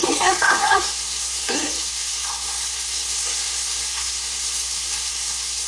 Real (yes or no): no